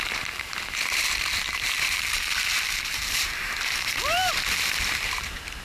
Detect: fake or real fake